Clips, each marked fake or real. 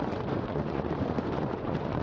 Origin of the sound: fake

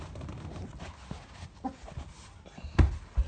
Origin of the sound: real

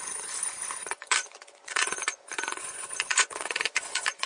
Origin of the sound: fake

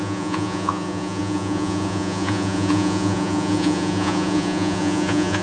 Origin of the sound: fake